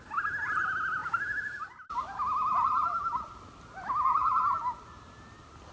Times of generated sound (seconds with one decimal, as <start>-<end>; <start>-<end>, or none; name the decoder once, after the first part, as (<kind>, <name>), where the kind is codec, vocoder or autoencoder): 1.0-4.4 (vocoder, BigVGAN v2)